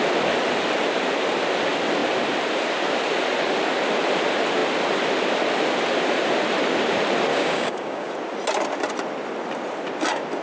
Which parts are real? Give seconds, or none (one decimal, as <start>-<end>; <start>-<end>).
0.0-7.3; 8.1-10.4

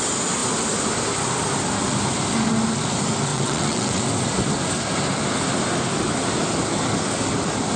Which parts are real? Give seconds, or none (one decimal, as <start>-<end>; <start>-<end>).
0.0-3.3; 4.0-7.8